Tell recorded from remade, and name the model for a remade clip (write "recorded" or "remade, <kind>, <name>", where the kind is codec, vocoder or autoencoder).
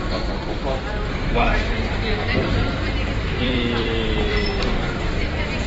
remade, vocoder, BigVGAN v2